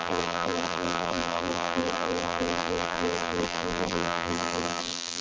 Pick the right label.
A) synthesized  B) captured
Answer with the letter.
A